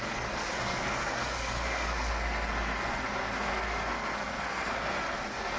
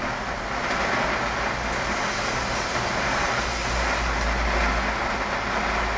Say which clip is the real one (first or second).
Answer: second